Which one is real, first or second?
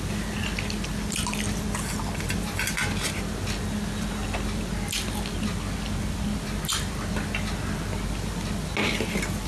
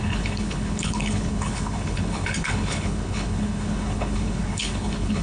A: first